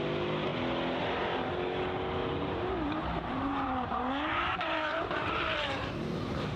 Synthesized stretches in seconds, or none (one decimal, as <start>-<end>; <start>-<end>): 2.2-6.6